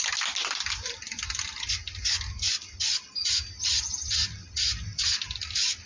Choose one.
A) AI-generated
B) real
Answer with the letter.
B